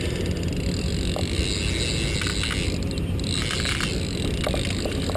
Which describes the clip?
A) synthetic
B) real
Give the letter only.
B